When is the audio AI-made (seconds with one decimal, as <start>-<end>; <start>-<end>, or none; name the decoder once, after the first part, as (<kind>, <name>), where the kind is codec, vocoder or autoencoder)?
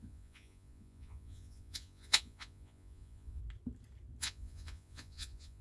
0.0-3.4 (vocoder, Vocos); 4.2-5.6